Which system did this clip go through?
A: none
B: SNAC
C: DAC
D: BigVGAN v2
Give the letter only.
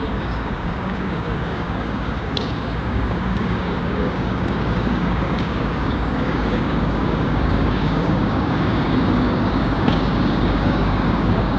C